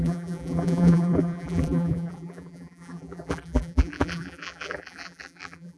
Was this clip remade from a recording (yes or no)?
yes